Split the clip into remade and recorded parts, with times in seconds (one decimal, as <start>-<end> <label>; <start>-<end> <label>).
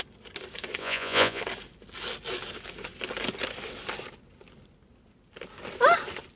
0.0-0.8 recorded; 0.8-1.4 remade; 1.4-6.4 recorded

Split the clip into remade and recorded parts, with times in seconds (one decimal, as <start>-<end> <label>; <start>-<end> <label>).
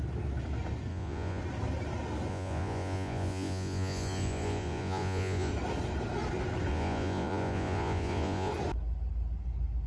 0.0-0.9 recorded; 0.9-1.4 remade; 1.4-2.3 recorded; 2.3-5.5 remade; 5.5-6.7 recorded; 6.7-8.5 remade; 8.5-9.9 recorded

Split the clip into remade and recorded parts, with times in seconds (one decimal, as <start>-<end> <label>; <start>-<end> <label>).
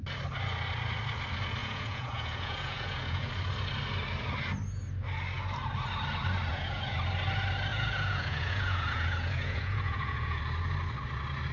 0.0-1.6 recorded; 1.6-3.3 remade; 3.3-6.5 recorded; 6.5-7.0 remade; 7.0-7.7 recorded; 7.7-10.4 remade; 10.4-11.5 recorded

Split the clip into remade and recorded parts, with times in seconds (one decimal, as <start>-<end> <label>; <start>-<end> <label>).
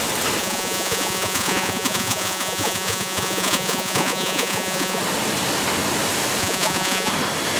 0.0-0.4 recorded; 0.4-5.0 remade; 5.0-6.4 recorded; 6.4-7.1 remade; 7.1-7.6 recorded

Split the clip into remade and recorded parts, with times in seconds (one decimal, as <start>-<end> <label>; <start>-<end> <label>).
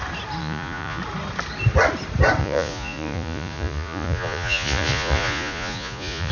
0.0-0.4 recorded; 0.4-1.0 remade; 1.0-2.4 recorded; 2.4-6.3 remade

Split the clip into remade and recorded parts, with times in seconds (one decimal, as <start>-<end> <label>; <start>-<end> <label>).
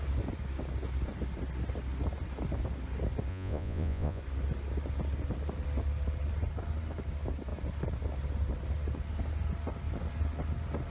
0.0-3.3 recorded; 3.3-4.2 remade; 4.2-10.9 recorded